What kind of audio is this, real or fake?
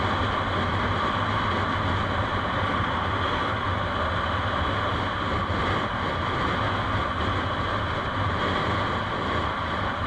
real